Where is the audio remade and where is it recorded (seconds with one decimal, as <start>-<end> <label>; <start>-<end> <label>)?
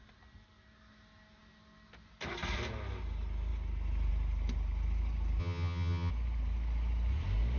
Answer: 0.0-5.4 recorded; 5.4-6.1 remade; 6.1-7.6 recorded